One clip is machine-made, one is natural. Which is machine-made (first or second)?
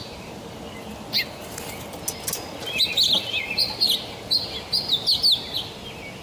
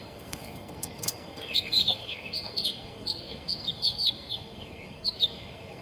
second